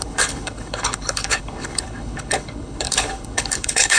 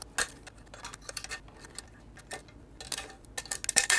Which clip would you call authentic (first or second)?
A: second